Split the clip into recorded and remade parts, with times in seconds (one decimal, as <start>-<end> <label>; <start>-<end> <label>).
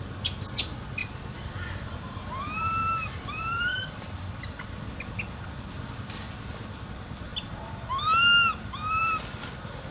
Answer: 0.0-1.0 recorded; 1.0-2.8 remade; 2.8-3.7 recorded; 3.7-4.7 remade; 4.7-9.9 recorded